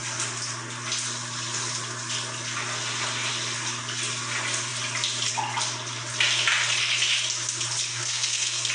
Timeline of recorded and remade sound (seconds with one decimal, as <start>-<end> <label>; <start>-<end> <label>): 0.0-7.9 recorded; 7.9-8.7 remade